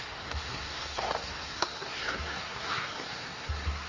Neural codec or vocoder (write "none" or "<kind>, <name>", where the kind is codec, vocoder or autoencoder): codec, SNAC